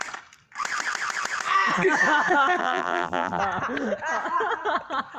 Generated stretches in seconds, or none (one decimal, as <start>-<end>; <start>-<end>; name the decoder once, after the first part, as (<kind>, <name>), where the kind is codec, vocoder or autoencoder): 2.6-3.4 (vocoder, BigVGAN v2)